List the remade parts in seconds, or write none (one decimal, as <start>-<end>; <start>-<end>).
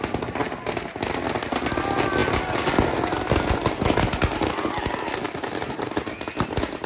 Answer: none